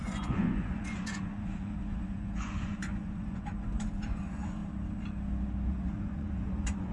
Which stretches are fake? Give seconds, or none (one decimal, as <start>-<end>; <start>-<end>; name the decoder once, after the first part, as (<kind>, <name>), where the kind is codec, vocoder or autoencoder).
0.0-4.6 (vocoder, Vocos); 5.7-6.9